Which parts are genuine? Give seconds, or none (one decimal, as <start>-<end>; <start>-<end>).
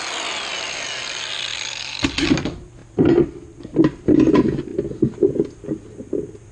0.0-6.5